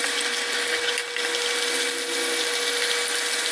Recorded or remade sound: recorded